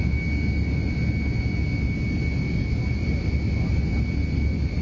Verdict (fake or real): real